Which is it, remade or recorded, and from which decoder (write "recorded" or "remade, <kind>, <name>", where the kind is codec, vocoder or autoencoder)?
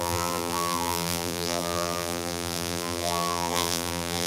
remade, vocoder, BigVGAN v2